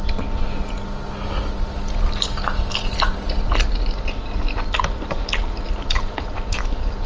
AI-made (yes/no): no